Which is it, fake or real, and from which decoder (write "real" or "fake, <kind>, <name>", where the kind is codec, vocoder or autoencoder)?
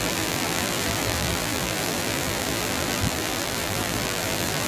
fake, vocoder, BigVGAN v2